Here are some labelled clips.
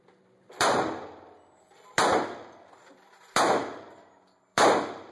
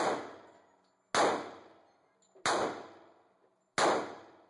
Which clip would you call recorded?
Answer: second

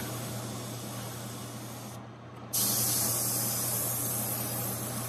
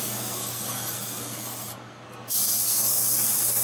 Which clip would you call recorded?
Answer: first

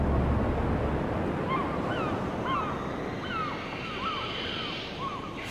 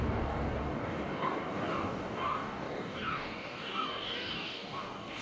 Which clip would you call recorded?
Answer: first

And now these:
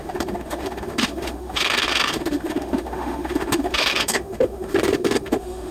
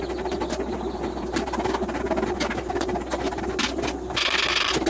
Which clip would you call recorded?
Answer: second